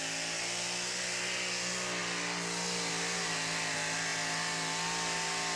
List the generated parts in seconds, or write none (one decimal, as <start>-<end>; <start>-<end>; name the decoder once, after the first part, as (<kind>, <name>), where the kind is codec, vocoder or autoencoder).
none